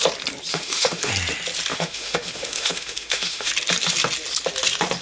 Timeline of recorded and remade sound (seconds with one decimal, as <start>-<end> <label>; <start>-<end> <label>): 0.0-0.5 recorded; 0.5-1.1 remade; 1.1-1.7 recorded; 1.7-3.5 remade; 3.5-5.0 recorded